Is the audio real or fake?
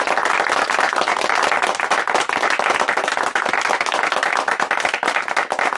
real